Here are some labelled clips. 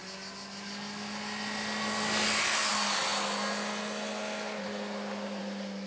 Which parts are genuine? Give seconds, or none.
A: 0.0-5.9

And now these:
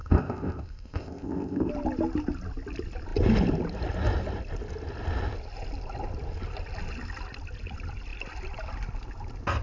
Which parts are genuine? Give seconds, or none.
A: 1.7-9.6

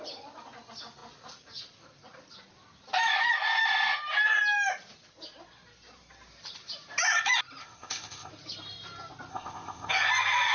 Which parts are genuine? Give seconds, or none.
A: 0.0-7.6; 8.3-9.3; 9.9-10.5

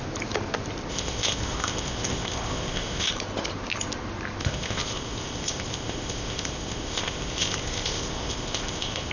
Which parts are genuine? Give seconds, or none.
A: 0.0-0.9; 3.1-4.4